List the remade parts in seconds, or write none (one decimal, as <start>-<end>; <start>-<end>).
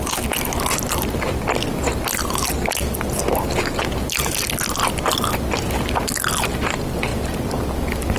none